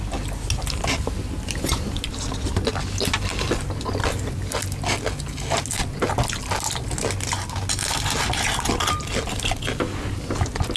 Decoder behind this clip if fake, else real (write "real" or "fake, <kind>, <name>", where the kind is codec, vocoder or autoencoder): real